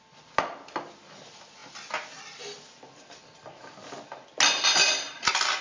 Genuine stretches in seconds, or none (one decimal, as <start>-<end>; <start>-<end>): 0.0-5.6